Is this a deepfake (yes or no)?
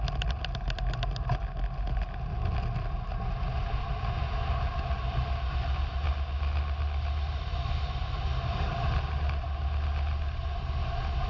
no